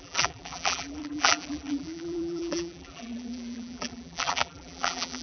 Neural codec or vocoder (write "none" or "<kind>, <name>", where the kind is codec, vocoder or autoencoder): vocoder, BigVGAN v2